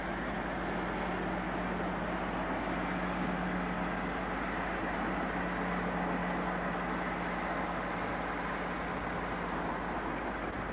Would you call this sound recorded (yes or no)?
yes